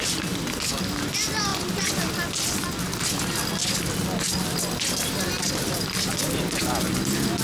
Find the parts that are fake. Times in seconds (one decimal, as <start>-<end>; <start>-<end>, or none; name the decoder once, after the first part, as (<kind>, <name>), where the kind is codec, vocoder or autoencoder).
none